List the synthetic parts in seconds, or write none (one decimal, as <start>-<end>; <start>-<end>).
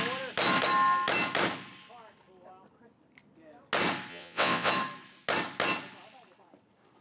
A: 4.1-4.7